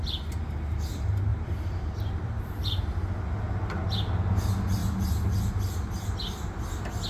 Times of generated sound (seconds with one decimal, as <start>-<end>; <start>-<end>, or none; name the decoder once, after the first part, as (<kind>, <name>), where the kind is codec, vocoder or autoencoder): 1.3-2.8 (vocoder, BigVGAN v2)